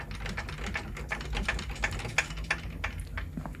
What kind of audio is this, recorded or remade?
recorded